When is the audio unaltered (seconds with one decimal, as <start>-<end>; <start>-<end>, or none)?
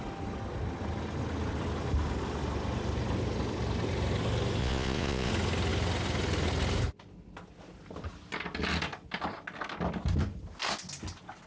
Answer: 0.0-4.6; 5.3-11.5